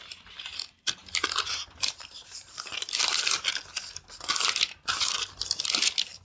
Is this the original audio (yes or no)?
yes